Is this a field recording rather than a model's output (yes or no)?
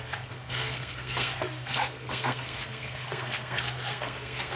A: no